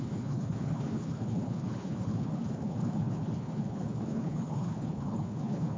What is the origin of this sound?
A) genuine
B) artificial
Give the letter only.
B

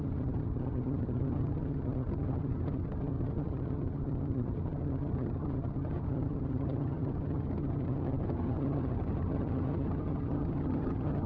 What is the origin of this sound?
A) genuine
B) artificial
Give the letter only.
B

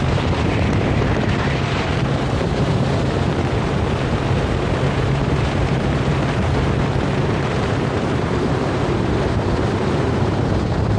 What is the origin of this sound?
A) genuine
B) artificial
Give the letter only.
B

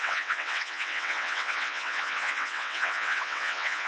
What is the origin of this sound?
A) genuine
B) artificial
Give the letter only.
B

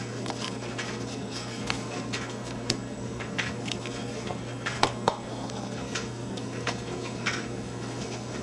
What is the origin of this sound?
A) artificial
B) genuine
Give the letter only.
A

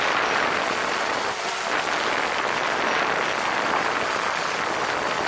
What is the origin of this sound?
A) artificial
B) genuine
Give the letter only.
B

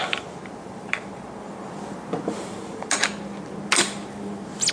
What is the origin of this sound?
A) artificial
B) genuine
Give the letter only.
B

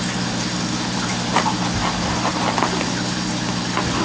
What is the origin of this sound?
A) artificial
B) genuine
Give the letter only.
B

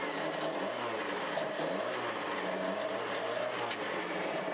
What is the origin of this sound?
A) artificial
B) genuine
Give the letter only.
B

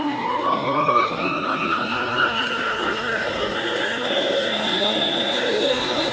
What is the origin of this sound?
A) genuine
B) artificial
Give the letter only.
B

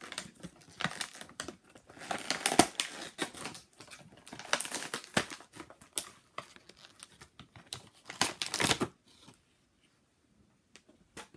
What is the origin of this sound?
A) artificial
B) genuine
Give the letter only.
B